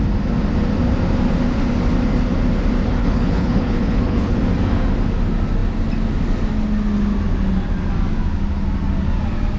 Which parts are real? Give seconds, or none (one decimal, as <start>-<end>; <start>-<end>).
0.0-3.0; 4.4-9.6